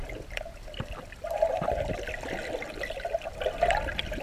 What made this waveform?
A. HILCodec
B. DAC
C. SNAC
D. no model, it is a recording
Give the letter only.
D